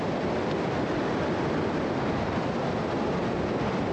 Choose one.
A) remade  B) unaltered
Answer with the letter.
B